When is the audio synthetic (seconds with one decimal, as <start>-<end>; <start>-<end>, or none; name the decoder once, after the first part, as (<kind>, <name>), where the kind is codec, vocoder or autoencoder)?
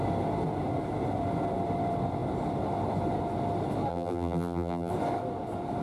3.9-4.9 (vocoder, BigVGAN v2)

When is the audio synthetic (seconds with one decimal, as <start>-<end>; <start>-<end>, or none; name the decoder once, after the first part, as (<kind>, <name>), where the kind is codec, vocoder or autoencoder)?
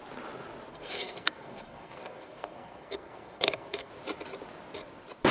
0.7-3.9 (codec, SNAC)